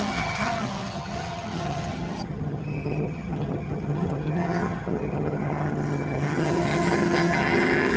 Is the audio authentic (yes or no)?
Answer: no